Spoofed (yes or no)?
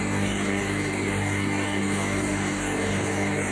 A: yes